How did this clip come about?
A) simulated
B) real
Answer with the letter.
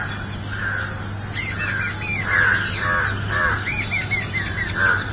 B